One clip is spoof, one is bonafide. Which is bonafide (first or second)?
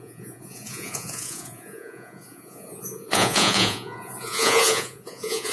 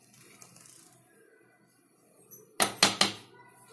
second